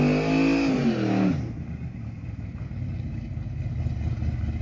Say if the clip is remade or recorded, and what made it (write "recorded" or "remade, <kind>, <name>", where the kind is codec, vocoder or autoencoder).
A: recorded